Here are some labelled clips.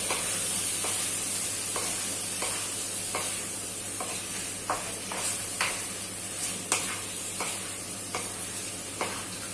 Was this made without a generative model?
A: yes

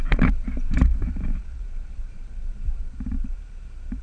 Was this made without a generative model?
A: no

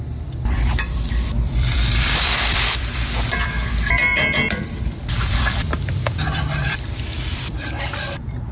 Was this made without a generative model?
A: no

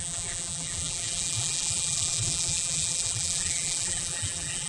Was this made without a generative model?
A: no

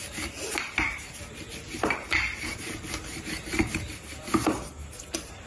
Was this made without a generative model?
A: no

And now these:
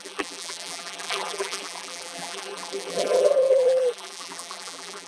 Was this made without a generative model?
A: no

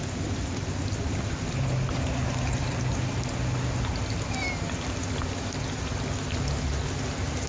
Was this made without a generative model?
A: yes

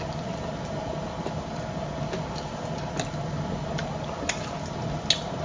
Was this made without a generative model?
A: yes